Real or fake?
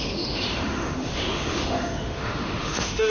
fake